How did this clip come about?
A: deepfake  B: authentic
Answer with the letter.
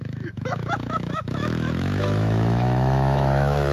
A